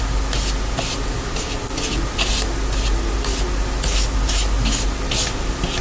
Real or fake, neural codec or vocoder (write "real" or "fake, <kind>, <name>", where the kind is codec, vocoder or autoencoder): real